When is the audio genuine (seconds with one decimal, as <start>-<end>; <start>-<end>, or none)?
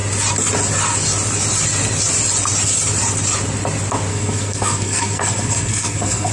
0.0-4.1